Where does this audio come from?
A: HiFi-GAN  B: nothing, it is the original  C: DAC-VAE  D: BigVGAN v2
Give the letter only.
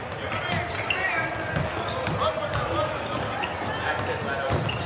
B